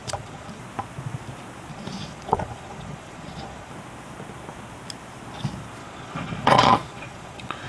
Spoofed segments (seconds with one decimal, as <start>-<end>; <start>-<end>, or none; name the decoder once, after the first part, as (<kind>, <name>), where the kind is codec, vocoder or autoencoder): 0.0-0.6 (vocoder, Vocos); 1.7-3.7; 5.8-7.7